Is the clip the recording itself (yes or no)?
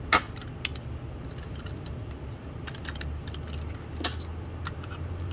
yes